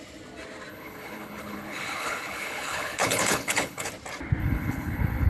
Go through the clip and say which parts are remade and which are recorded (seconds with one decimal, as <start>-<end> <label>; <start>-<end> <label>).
0.0-0.7 recorded; 0.7-3.9 remade; 3.9-4.4 recorded; 4.4-5.3 remade